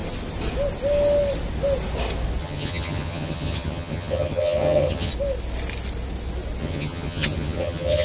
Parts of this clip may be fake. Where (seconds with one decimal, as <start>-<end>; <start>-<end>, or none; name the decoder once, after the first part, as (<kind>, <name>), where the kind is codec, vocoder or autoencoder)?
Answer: 2.4-5.1 (vocoder, HiFi-GAN); 6.6-8.0